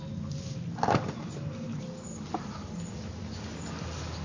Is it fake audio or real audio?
real